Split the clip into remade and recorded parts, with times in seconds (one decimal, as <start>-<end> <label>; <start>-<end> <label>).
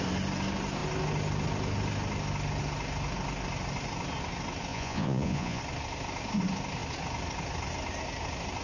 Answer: 0.0-4.7 recorded; 4.7-5.6 remade; 5.6-8.6 recorded